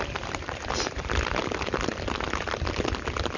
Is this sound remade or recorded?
recorded